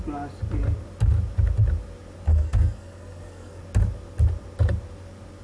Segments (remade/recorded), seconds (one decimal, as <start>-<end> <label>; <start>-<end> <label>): 0.0-2.3 recorded; 2.3-3.6 remade; 3.6-5.4 recorded